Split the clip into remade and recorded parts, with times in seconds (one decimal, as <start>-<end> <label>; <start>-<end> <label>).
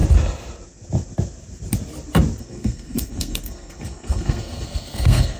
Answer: 0.0-2.4 recorded; 2.4-5.4 remade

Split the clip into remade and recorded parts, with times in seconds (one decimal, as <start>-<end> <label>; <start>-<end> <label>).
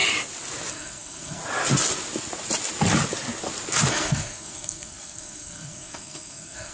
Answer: 0.0-0.7 recorded; 0.7-1.4 remade; 1.4-3.9 recorded; 3.9-6.7 remade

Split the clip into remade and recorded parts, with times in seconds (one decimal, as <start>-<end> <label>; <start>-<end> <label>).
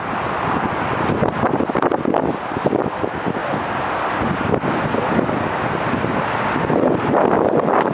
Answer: 0.0-7.9 recorded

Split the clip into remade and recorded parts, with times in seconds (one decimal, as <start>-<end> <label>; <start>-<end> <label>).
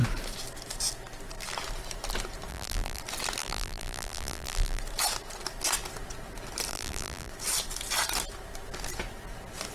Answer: 0.0-2.5 recorded; 2.5-3.0 remade; 3.0-3.4 recorded; 3.4-4.8 remade; 4.8-6.7 recorded; 6.7-7.3 remade; 7.3-9.7 recorded